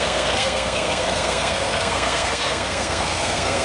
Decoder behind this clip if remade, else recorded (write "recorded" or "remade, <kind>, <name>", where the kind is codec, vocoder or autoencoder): remade, codec, SNAC